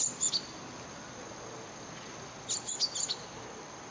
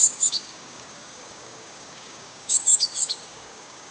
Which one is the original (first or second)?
first